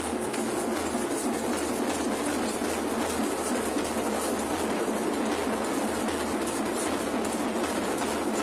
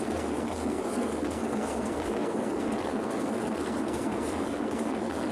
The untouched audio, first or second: first